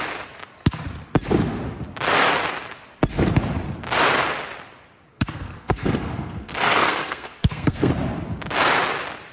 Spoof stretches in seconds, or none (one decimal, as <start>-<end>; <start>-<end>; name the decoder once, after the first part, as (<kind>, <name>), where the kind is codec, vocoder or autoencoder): 5.1-7.9 (codec, SNAC)